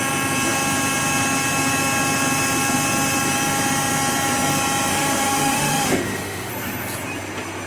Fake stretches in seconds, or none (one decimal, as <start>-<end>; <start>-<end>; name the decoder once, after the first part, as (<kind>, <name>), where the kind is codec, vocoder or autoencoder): 4.9-6.5 (autoencoder, DAC-VAE)